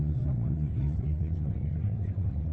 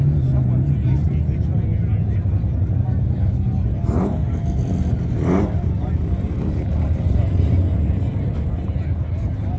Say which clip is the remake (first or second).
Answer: first